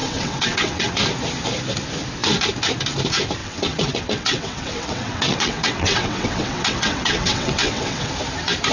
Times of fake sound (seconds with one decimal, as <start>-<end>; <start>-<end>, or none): 0.0-0.9; 3.4-8.1